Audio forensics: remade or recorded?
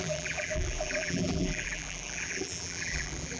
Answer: remade